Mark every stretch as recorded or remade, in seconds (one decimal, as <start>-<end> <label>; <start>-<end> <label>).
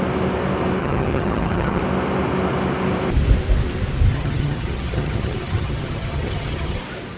0.0-0.8 recorded; 0.8-1.8 remade; 1.8-4.1 recorded; 4.1-6.8 remade; 6.8-7.2 recorded